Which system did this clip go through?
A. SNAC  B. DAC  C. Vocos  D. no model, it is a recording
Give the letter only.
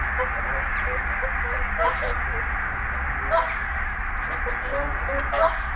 D